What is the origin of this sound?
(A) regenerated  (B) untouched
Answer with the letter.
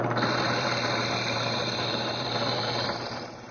A